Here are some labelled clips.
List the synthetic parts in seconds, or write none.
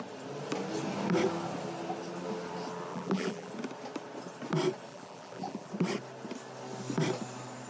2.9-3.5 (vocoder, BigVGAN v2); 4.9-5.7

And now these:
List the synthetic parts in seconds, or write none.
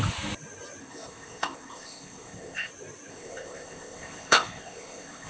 0.8-2.7 (codec, ZipCodec); 3.1-5.3